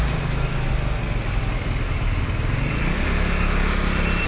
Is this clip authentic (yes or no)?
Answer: yes